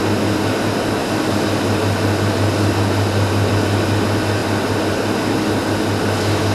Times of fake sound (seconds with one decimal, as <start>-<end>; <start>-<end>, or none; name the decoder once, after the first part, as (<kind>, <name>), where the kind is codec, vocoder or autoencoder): none